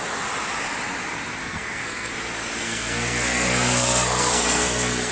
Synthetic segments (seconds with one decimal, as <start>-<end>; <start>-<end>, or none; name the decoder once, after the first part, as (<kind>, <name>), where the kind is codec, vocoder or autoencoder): 1.4-2.1 (codec, SNAC); 2.6-5.1